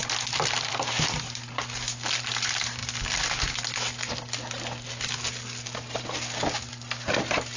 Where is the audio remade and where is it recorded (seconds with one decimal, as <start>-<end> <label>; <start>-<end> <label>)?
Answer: 0.0-7.6 recorded